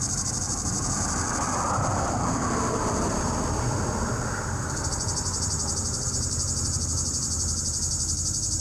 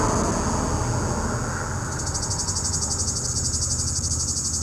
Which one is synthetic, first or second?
first